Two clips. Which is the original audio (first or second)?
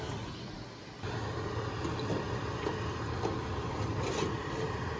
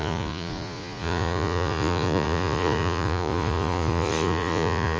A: first